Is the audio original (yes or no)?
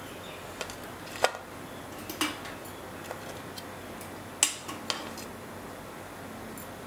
yes